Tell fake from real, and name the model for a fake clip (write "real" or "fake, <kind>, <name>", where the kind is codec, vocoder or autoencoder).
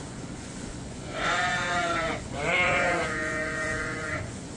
fake, vocoder, Vocos